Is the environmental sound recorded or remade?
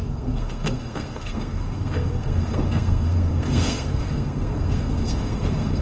remade